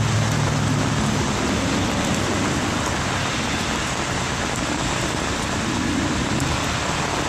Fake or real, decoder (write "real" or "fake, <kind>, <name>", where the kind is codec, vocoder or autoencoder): real